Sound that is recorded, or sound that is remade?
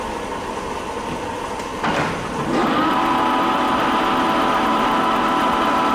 recorded